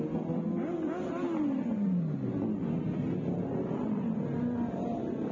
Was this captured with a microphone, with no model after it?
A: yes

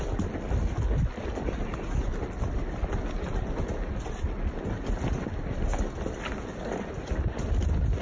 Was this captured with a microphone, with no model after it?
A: yes